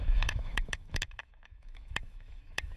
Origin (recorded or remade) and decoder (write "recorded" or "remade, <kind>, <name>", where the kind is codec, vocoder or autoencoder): remade, autoencoder, DAC-VAE